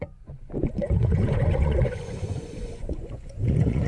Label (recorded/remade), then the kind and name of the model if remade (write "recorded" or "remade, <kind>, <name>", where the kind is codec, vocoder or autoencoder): remade, vocoder, Vocos